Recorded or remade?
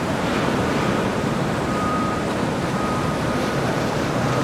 remade